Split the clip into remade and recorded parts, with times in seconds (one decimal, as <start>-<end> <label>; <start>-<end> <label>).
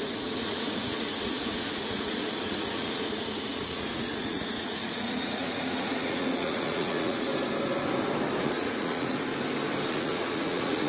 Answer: 0.0-7.3 remade; 7.3-8.4 recorded; 8.4-9.3 remade; 9.3-9.9 recorded; 9.9-10.9 remade